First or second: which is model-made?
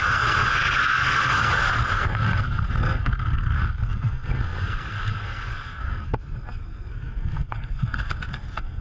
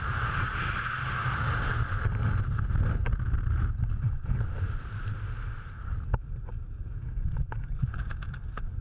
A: first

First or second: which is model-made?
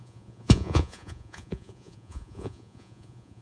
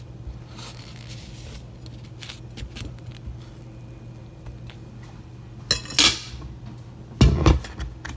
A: first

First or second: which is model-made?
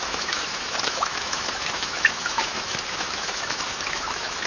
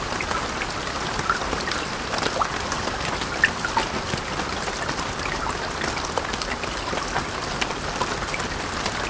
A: first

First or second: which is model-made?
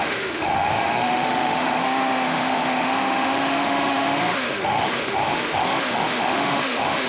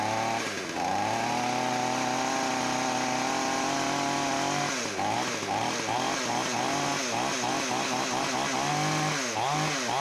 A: first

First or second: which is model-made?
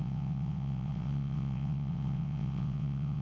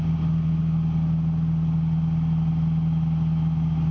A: first